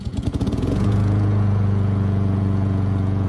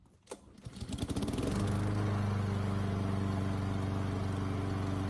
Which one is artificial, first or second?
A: first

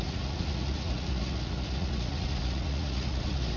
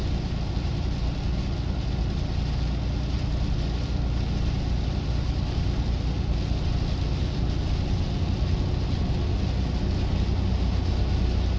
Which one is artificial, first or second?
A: first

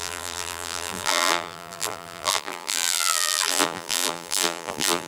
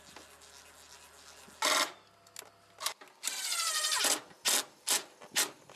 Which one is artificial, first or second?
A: first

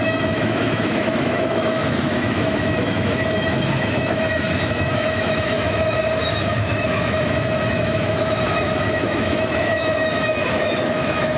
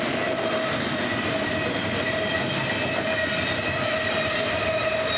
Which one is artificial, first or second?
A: first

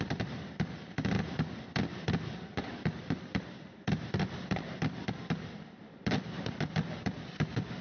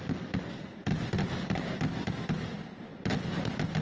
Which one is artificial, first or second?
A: first